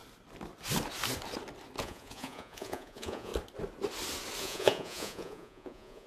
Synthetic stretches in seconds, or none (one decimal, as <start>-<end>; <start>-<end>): 1.8-3.3; 4.4-6.1